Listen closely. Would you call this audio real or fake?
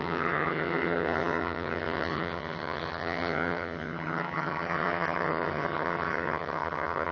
fake